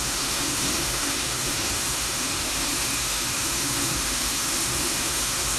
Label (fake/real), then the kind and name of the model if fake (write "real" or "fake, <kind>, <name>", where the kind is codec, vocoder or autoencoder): fake, autoencoder, DAC-VAE